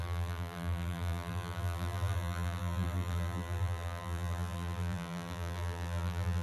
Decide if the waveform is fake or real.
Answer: fake